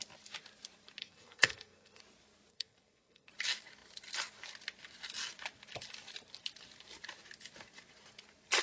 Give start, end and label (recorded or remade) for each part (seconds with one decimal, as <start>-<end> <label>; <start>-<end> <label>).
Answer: 0.0-1.0 recorded; 1.0-2.0 remade; 2.0-2.5 recorded; 2.5-3.3 remade; 3.3-8.6 recorded